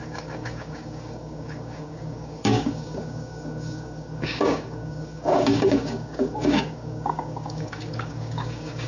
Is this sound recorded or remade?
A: remade